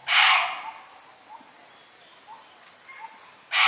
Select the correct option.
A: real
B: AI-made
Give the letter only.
A